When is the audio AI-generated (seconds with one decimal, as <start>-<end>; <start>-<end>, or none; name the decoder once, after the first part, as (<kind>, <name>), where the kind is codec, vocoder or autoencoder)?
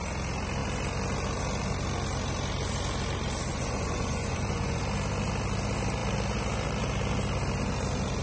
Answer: 3.5-4.8 (vocoder, Vocos)